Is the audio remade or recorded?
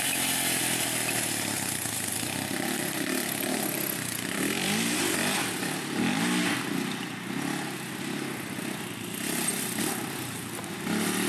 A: recorded